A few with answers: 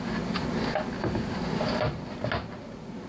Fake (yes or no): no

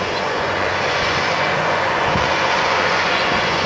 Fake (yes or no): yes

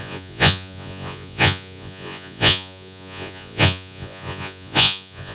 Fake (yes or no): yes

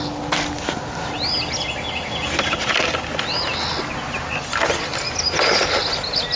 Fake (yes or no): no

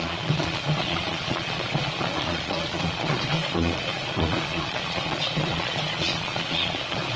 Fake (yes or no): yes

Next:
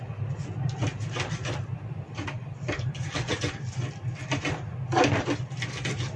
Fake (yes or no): no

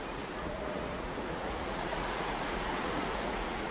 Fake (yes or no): yes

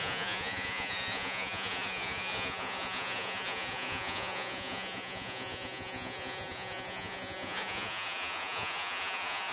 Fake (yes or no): yes